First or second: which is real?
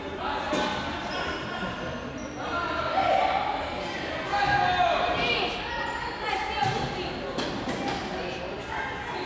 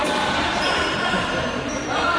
first